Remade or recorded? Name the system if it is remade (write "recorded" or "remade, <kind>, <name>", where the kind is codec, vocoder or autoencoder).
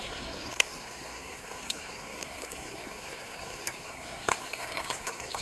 remade, codec, SNAC